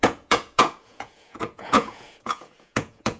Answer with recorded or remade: remade